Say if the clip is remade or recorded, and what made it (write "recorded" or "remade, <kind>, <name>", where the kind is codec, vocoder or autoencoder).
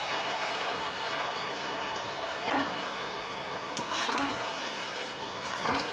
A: remade, codec, SNAC